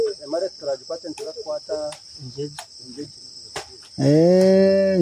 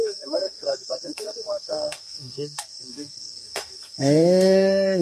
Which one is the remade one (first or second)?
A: second